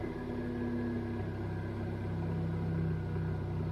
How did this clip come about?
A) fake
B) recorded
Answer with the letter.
B